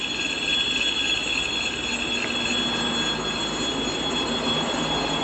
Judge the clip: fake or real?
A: real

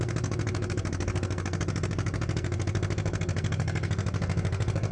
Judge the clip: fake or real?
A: fake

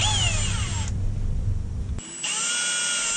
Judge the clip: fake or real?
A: real